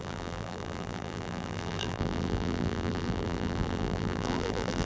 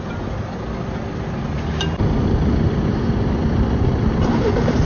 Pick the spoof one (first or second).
first